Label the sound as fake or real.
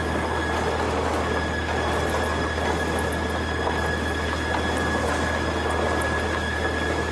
real